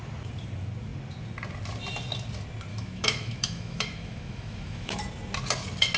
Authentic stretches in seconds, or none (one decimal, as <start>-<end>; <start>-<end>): 0.0-2.7; 5.0-6.0